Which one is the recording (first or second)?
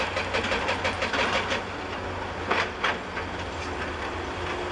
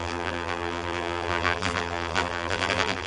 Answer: first